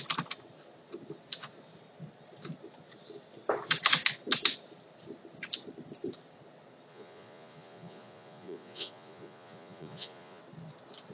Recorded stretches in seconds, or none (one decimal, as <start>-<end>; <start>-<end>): 0.0-6.9; 10.4-11.1